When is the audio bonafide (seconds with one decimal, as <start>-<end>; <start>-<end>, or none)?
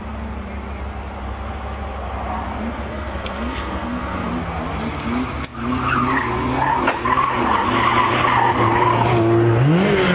0.0-2.9; 4.3-10.1